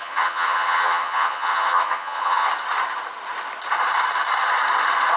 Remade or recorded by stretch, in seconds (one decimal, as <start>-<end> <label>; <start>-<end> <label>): 0.0-2.5 remade; 2.5-5.2 recorded

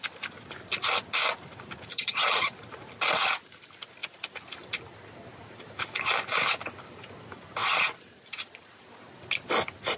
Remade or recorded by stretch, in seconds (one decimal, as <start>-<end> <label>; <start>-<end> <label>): 0.0-1.9 recorded; 1.9-2.5 remade; 2.5-10.0 recorded

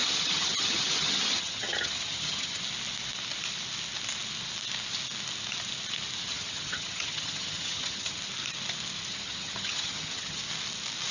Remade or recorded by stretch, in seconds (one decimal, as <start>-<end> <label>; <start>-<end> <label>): 0.0-2.6 remade; 2.6-6.2 recorded; 6.2-8.2 remade; 8.2-9.1 recorded; 9.1-10.4 remade; 10.4-11.1 recorded

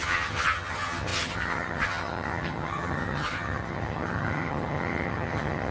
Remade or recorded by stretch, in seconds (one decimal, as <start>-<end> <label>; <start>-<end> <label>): 0.0-5.7 remade